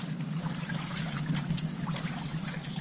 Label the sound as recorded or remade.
recorded